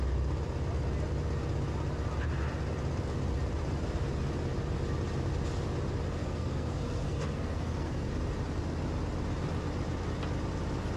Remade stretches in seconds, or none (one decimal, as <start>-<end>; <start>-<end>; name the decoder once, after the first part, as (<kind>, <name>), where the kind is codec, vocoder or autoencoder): 6.2-8.1 (codec, SNAC)